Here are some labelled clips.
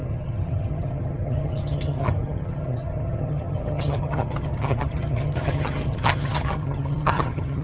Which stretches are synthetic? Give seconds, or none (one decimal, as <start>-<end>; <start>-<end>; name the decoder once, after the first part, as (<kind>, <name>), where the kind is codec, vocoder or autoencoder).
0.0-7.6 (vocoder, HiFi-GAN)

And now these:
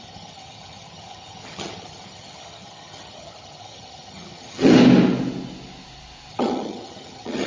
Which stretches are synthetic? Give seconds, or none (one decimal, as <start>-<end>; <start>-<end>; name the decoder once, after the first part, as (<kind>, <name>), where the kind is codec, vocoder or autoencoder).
0.0-4.7 (vocoder, HiFi-GAN); 6.3-7.5

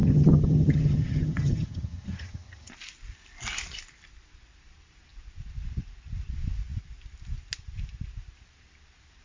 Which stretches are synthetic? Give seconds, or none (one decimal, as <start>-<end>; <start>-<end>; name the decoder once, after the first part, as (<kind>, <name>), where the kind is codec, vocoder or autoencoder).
0.0-2.7 (vocoder, HiFi-GAN)